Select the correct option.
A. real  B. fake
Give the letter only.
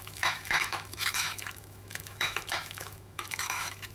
B